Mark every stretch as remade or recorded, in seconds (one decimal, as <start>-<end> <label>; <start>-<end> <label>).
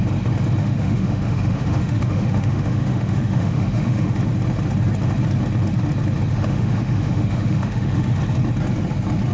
0.0-0.6 recorded; 0.6-4.2 remade; 4.2-6.3 recorded; 6.3-8.2 remade; 8.2-9.3 recorded